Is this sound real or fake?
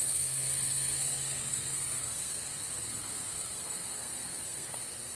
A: fake